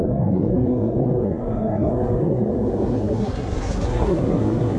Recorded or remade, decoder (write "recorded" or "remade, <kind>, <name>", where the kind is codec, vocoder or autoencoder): remade, codec, SNAC